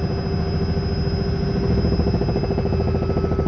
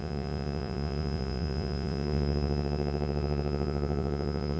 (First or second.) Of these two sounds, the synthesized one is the second